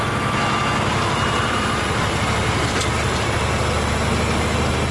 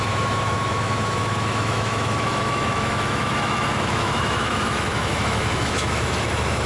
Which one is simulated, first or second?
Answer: second